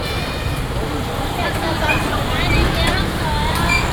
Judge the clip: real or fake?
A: real